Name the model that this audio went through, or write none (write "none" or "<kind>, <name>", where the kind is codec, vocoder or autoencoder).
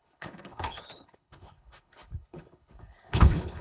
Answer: codec, HILCodec